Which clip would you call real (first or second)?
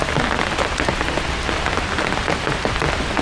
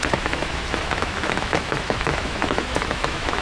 first